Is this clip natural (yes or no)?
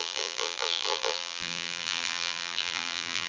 no